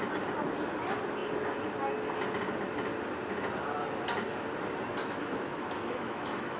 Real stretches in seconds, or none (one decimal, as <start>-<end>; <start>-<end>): 0.0-5.0